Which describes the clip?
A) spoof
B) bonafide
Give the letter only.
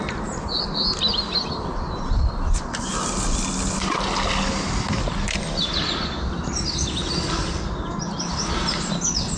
B